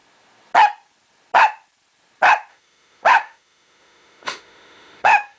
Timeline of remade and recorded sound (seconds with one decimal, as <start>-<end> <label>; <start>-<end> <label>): 0.0-2.5 recorded; 2.5-5.4 remade